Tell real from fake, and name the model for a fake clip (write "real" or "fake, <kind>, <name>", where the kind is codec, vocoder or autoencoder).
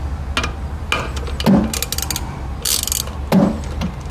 real